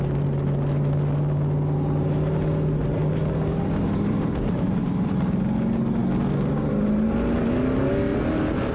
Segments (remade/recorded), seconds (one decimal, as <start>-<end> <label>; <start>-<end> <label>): 0.0-3.5 recorded; 3.5-5.4 remade; 5.4-8.7 recorded